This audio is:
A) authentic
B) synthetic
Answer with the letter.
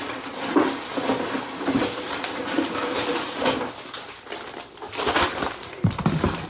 B